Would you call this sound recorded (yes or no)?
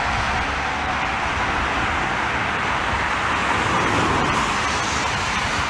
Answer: yes